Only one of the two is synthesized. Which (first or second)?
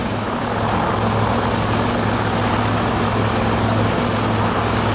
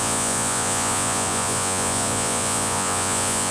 second